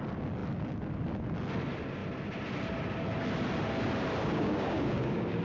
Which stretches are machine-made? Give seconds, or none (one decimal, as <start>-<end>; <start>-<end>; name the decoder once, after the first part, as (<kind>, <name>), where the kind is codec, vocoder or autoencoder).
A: 4.2-5.4 (codec, DAC)